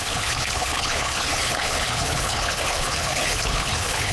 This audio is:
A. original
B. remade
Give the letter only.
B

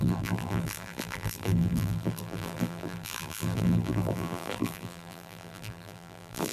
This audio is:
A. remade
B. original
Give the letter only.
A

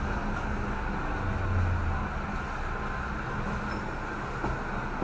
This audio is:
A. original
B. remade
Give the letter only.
A